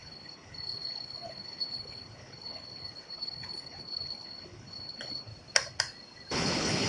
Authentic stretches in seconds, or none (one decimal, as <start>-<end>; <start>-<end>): 5.3-6.3